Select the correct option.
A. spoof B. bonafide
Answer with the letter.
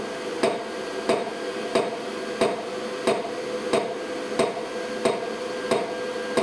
B